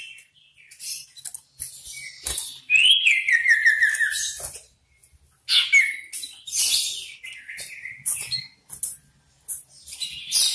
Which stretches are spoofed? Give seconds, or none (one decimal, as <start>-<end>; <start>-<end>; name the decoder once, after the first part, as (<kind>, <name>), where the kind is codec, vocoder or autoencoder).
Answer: none